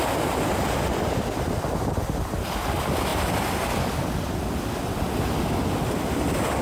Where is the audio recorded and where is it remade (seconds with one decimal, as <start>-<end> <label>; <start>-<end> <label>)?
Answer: 0.0-6.6 recorded